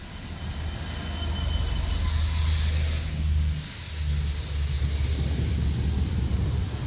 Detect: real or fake real